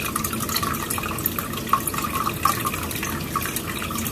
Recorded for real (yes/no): yes